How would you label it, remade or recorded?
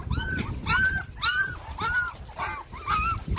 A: recorded